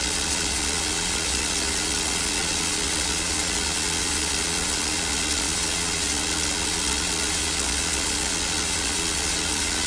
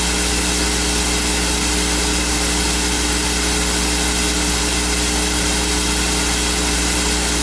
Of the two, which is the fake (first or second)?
first